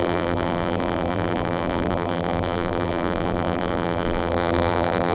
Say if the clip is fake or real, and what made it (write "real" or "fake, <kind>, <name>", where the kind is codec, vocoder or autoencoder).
fake, vocoder, BigVGAN v2